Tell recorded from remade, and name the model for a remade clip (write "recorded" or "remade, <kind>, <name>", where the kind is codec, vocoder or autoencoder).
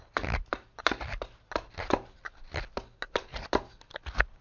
recorded